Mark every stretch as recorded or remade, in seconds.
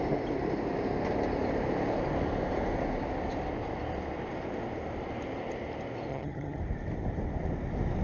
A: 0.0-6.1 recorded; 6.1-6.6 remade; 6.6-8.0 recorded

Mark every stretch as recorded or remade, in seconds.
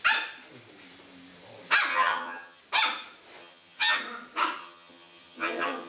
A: 0.0-1.9 recorded; 1.9-2.6 remade; 2.6-3.4 recorded; 3.4-4.0 remade; 4.0-4.6 recorded; 4.6-5.9 remade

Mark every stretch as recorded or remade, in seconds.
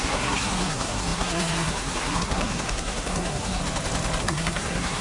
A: 0.0-3.6 remade; 3.6-4.2 recorded; 4.2-5.0 remade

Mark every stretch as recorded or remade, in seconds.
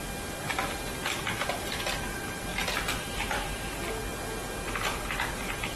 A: 0.0-5.8 recorded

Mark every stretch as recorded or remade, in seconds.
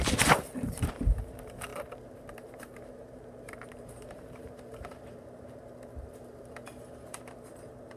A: 0.0-1.7 remade; 1.7-2.3 recorded; 2.3-8.0 remade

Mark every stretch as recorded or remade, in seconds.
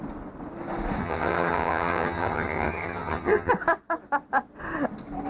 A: 0.0-1.0 recorded; 1.0-3.5 remade; 3.5-5.3 recorded